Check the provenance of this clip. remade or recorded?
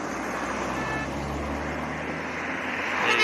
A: recorded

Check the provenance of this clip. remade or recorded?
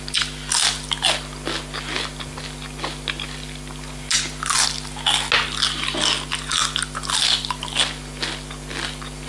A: recorded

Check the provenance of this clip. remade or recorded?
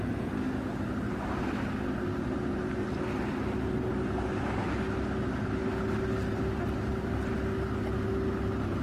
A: recorded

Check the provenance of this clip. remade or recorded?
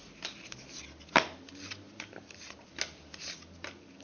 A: recorded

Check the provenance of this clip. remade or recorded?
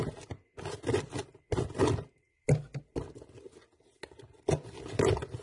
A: recorded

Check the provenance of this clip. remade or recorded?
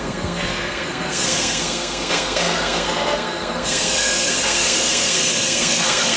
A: remade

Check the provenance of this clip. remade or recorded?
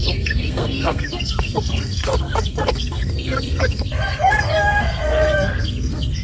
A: remade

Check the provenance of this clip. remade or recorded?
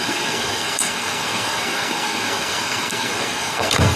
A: remade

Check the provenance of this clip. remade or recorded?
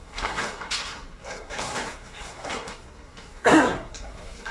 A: remade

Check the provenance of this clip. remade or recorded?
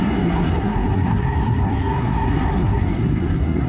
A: remade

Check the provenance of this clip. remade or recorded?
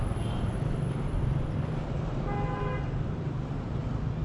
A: recorded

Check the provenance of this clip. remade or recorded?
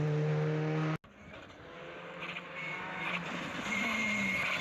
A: recorded